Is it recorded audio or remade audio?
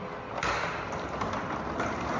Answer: recorded